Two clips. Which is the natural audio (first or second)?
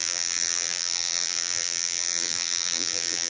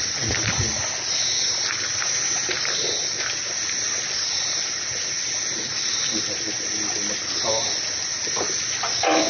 second